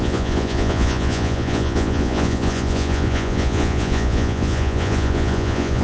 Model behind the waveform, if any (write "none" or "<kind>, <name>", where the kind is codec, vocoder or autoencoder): vocoder, Vocos